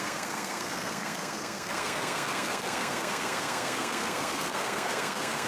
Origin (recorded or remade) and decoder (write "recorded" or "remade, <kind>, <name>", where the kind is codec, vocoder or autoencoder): remade, codec, SNAC